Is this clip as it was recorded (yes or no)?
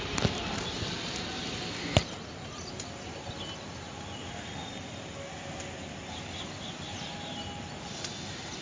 yes